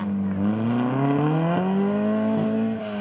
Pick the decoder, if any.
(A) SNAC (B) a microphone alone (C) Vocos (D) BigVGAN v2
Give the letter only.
B